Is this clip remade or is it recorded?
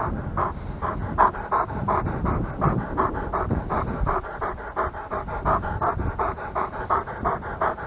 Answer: recorded